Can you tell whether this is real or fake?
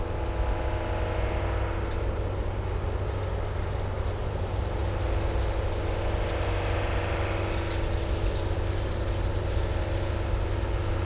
real